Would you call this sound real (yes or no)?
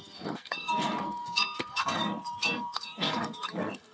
no